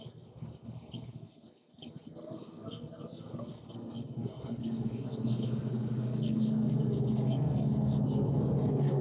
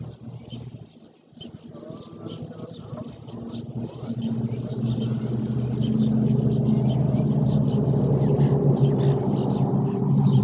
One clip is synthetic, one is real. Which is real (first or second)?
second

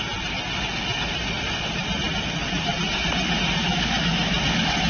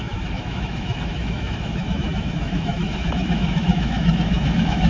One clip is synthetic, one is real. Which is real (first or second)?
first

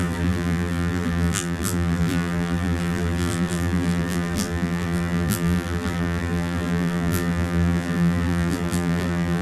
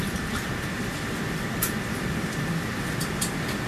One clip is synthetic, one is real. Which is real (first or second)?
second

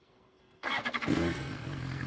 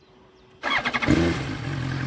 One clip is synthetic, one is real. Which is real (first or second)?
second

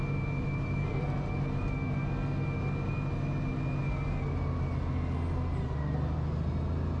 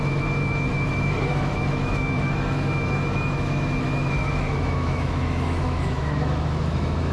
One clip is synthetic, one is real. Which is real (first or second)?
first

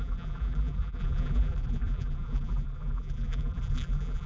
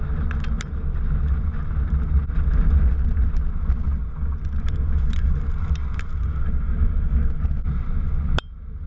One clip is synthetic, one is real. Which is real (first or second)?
second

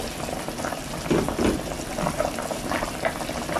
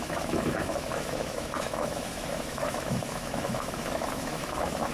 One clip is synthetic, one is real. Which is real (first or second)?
first